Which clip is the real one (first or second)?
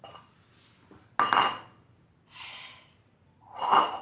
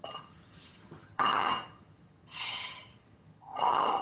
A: first